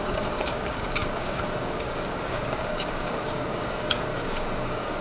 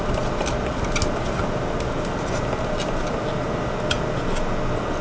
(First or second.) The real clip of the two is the second